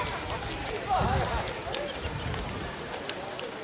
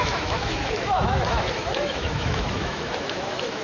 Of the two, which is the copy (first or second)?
second